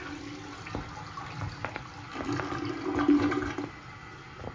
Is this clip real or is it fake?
real